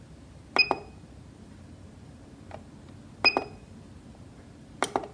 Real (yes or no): yes